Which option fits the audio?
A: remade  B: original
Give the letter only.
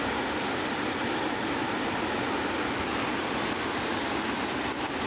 B